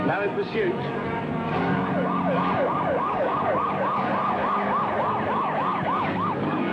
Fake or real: fake